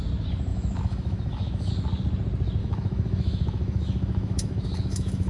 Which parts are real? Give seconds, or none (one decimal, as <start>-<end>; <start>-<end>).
0.0-0.5; 1.7-2.6